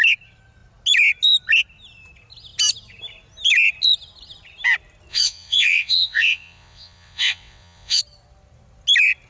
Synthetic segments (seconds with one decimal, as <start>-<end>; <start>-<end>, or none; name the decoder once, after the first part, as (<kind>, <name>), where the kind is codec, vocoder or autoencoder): 5.1-8.0 (vocoder, WaveNeXt)